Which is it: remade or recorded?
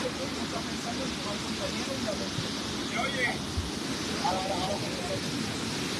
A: recorded